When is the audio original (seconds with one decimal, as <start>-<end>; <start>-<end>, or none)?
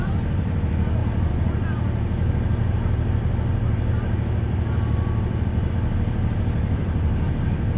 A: 0.0-7.8